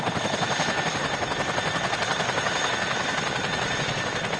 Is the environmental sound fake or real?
real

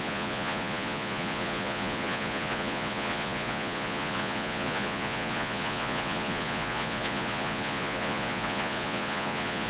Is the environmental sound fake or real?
fake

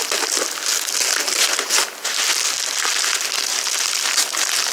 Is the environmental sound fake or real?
real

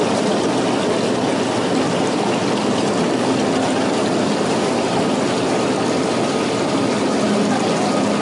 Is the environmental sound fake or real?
real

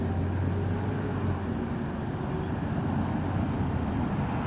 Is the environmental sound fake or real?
real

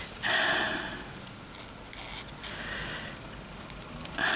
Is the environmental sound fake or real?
real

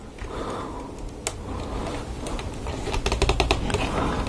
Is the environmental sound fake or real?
real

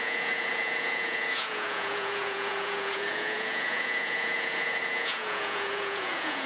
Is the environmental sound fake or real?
fake